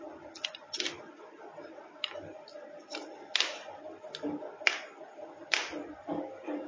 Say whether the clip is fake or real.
real